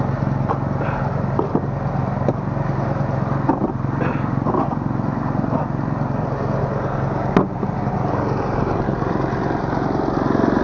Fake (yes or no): no